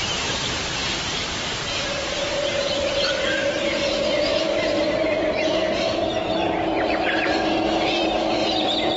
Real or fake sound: fake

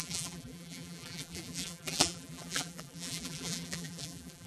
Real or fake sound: fake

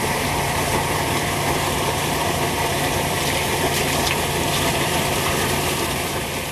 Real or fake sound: fake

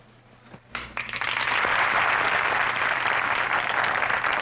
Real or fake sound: fake